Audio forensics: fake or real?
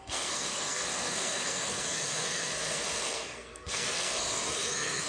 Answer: fake